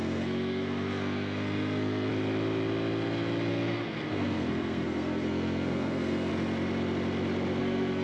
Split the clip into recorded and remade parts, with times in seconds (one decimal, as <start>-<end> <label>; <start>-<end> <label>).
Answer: 0.0-2.1 remade; 2.1-3.5 recorded; 3.5-6.3 remade; 6.3-7.6 recorded; 7.6-8.0 remade